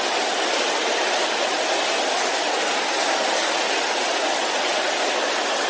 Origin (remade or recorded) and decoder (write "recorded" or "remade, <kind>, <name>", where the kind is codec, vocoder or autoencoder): recorded